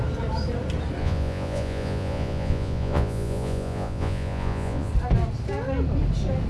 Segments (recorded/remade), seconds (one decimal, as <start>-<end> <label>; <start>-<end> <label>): 0.0-1.0 recorded; 1.0-4.9 remade; 4.9-6.5 recorded

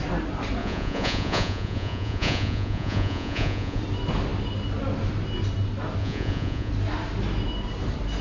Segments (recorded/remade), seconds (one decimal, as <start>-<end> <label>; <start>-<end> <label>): 0.0-0.6 recorded; 0.6-3.8 remade; 3.8-6.0 recorded; 6.0-6.7 remade; 6.7-8.2 recorded